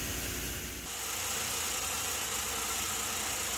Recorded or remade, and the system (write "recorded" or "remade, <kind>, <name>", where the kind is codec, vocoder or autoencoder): recorded